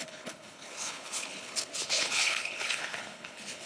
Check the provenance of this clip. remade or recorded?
remade